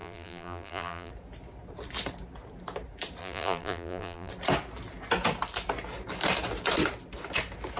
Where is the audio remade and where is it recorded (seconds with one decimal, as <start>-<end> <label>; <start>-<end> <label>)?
0.0-1.1 remade; 1.1-3.2 recorded; 3.2-4.3 remade; 4.3-7.8 recorded